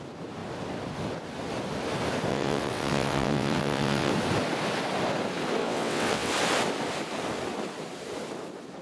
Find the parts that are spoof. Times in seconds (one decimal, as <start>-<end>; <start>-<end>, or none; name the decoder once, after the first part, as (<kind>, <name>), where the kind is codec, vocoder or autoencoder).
2.3-4.1 (vocoder, WaveNeXt); 5.6-6.3